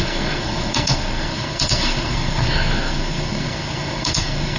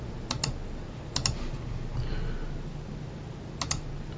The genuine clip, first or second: second